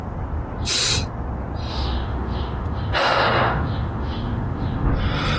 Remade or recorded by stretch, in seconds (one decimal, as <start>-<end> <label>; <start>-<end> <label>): 0.0-1.7 recorded; 1.7-4.9 remade; 4.9-5.4 recorded